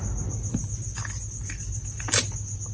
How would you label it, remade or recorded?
recorded